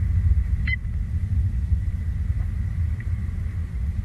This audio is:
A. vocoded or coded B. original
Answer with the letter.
A